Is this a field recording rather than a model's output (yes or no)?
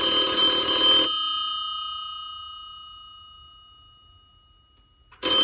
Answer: yes